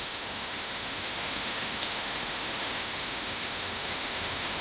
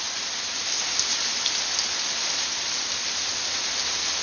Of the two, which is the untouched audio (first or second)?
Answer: second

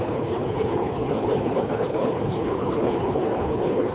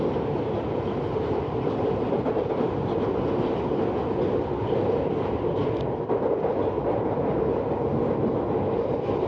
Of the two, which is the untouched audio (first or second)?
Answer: second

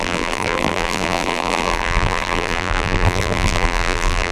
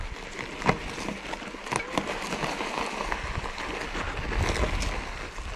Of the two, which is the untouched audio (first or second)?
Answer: second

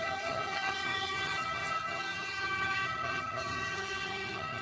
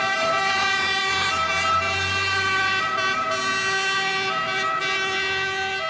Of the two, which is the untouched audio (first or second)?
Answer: second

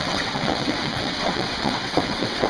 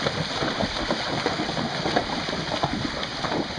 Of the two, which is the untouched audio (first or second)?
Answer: second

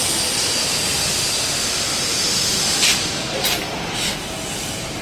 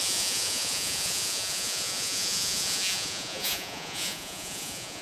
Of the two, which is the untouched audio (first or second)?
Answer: first